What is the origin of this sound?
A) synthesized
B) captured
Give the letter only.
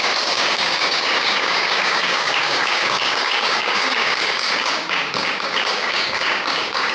A